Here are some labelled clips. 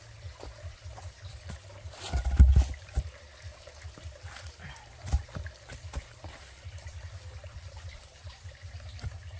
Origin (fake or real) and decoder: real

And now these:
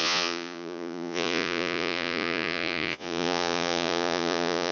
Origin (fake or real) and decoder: fake, vocoder, Vocos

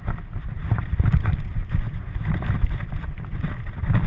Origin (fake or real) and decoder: real